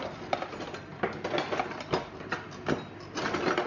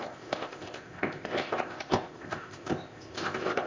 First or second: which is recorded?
first